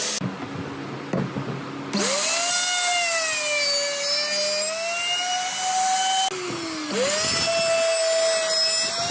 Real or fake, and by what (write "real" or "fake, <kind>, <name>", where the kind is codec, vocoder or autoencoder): real